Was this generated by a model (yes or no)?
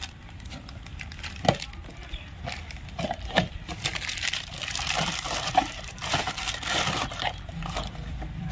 yes